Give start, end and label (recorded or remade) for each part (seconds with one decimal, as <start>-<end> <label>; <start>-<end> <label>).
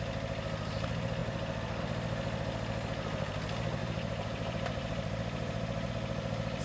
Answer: 0.0-3.8 recorded; 3.8-5.9 remade; 5.9-6.6 recorded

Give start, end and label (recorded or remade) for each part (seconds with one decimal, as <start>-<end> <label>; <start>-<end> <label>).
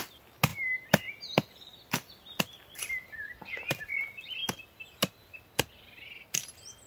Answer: 0.0-0.5 recorded; 0.5-1.2 remade; 1.2-1.7 recorded; 1.7-2.9 remade; 2.9-6.9 recorded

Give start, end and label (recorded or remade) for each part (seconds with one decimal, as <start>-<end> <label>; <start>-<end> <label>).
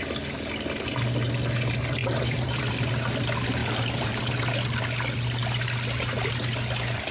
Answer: 0.0-2.0 recorded; 2.0-2.6 remade; 2.6-3.6 recorded; 3.6-4.2 remade; 4.2-7.1 recorded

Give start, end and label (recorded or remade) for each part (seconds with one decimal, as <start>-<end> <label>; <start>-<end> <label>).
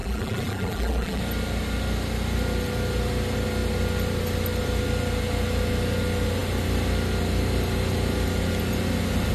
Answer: 0.0-1.2 remade; 1.2-9.3 recorded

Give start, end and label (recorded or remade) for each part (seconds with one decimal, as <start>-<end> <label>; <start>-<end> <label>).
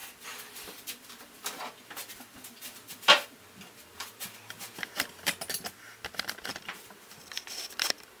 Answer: 0.0-4.9 remade; 4.9-6.5 recorded; 6.5-8.2 remade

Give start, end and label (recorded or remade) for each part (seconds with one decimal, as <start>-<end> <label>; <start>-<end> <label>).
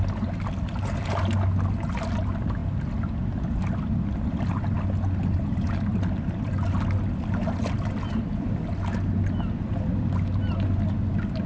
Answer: 0.0-11.5 recorded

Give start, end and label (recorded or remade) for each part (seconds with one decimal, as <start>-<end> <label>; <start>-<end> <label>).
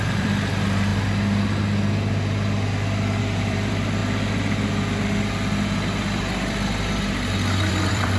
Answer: 0.0-0.9 remade; 0.9-3.2 recorded; 3.2-4.0 remade; 4.0-7.7 recorded; 7.7-8.2 remade